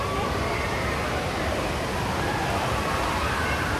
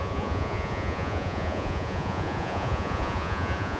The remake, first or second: second